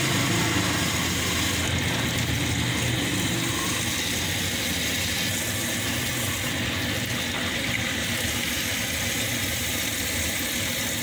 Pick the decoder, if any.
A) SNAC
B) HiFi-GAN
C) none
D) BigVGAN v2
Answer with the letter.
C